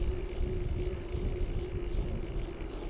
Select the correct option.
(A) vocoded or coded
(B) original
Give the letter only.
B